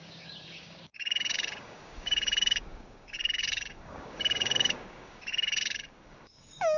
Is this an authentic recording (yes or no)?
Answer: no